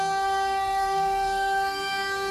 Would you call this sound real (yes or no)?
no